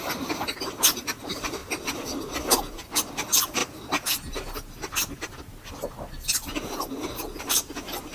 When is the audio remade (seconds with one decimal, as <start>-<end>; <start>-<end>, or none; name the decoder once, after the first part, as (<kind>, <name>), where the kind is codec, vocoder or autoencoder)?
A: 0.0-1.6 (vocoder, BigVGAN v2); 2.6-3.6; 7.4-8.1